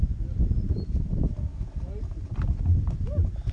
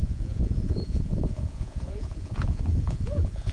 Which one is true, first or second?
first